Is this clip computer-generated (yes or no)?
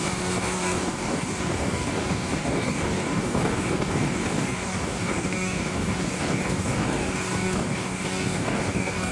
yes